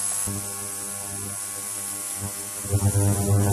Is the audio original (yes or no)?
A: yes